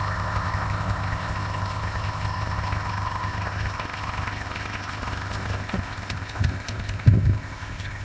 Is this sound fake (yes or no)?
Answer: yes